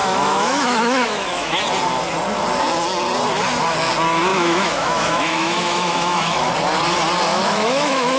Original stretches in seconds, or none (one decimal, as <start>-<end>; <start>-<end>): 1.6-4.3; 6.5-7.3